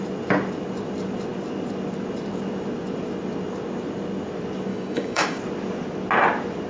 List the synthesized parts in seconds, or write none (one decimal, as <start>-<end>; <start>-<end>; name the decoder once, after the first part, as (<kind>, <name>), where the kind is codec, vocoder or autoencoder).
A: 4.7-5.4 (codec, DAC)